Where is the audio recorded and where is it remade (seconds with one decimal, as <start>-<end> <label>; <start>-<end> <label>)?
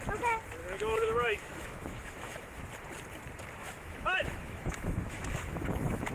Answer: 0.0-0.6 recorded; 0.6-2.6 remade; 2.6-3.6 recorded; 3.6-6.1 remade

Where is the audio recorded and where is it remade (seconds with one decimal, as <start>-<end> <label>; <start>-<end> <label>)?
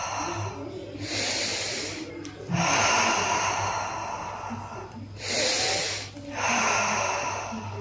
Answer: 0.0-0.5 remade; 0.5-1.5 recorded; 1.5-2.1 remade; 2.1-7.8 recorded